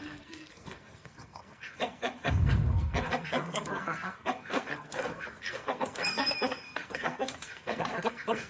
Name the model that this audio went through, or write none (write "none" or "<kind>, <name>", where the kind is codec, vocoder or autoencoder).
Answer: codec, SNAC